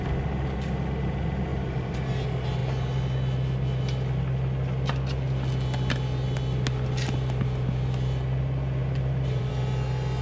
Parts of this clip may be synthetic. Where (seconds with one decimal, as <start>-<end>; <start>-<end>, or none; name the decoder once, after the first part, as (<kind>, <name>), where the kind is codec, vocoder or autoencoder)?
1.5-2.1 (vocoder, BigVGAN v2); 8.8-9.5

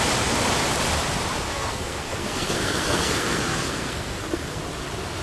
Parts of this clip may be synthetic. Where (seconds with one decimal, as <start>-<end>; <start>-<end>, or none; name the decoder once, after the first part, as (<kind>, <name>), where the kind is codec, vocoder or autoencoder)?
1.5-4.6 (codec, SNAC)

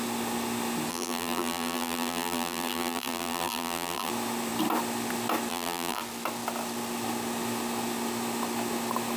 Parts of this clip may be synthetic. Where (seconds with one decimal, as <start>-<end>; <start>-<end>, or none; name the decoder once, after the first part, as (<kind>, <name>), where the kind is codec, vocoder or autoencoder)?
0.9-4.1 (vocoder, BigVGAN v2); 5.5-6.0

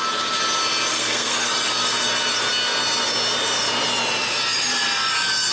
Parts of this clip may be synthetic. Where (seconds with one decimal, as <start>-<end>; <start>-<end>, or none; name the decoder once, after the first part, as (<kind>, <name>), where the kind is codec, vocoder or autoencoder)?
0.9-1.5 (codec, SNAC)